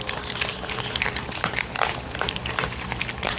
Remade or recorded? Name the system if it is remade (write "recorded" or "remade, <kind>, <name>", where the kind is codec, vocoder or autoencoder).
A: recorded